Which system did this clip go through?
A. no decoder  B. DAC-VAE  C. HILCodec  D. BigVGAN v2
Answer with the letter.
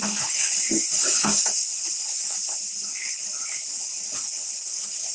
C